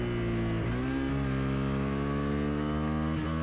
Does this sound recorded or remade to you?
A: recorded